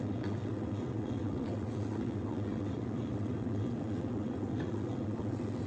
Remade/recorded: remade